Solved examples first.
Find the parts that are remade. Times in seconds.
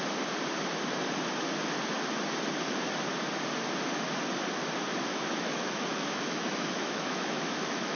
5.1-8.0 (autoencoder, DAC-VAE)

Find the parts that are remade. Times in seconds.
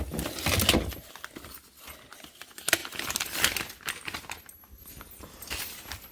none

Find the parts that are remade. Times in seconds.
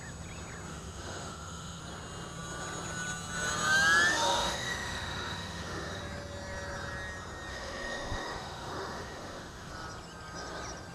0.7-1.8 (autoencoder, DAC-VAE); 4.1-6.0; 7.5-9.7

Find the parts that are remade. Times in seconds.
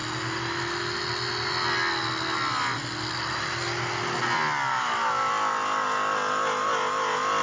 4.7-5.3 (autoencoder, DAC-VAE)